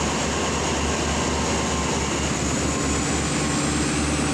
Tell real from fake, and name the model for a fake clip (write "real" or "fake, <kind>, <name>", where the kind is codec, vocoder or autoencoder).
real